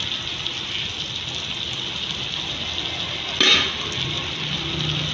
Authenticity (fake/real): real